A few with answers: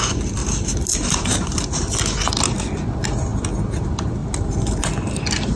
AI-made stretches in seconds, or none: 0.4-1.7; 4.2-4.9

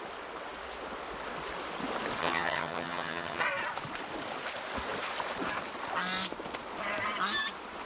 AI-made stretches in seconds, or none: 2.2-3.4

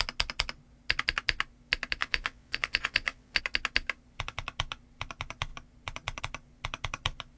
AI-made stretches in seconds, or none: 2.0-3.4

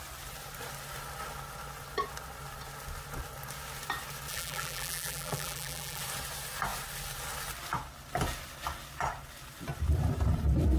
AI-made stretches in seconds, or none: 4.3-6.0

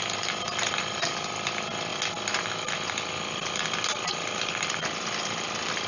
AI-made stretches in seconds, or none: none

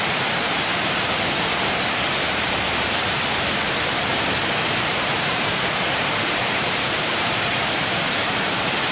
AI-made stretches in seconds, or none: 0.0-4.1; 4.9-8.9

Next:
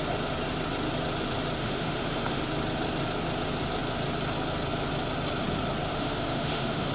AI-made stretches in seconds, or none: 1.6-2.4; 5.9-6.9